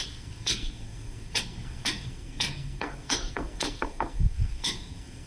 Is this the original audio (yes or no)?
no